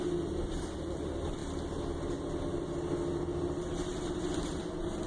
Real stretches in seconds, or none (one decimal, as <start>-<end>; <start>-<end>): 0.0-3.9; 4.6-5.1